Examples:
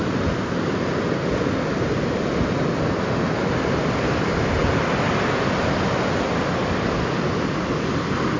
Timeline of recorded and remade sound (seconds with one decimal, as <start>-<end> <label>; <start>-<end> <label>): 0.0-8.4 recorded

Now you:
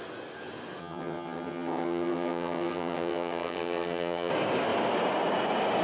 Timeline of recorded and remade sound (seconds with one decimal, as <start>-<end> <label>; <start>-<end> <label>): 0.0-0.8 recorded; 0.8-4.3 remade; 4.3-5.8 recorded

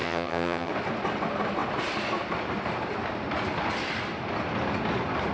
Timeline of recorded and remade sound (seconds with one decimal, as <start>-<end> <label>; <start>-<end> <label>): 0.0-0.7 remade; 0.7-5.3 recorded

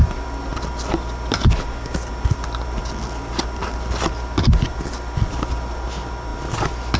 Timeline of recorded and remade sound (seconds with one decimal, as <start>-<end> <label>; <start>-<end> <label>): 0.0-7.0 recorded

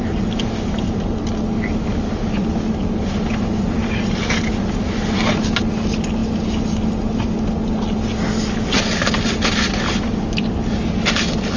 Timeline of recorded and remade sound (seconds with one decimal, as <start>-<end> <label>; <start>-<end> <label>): 0.0-11.6 recorded

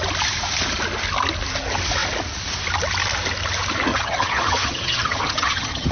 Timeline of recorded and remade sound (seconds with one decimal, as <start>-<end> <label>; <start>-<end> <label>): 0.0-3.9 recorded; 3.9-5.9 remade

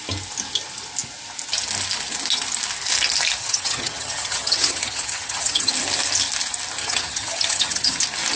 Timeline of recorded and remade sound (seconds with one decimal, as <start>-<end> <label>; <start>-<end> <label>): 0.0-3.4 recorded; 3.4-5.7 remade; 5.7-6.8 recorded; 6.8-8.0 remade; 8.0-8.4 recorded